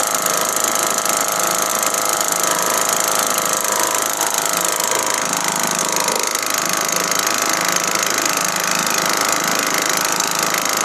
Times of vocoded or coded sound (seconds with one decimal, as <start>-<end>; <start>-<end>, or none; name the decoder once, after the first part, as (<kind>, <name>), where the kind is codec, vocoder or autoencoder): none